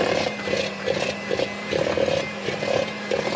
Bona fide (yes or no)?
yes